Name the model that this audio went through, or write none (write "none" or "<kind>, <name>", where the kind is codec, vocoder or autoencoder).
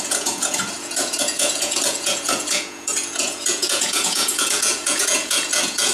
vocoder, Vocos